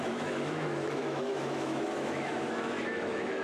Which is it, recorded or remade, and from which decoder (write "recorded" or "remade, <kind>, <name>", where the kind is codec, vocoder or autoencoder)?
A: remade, autoencoder, DAC-VAE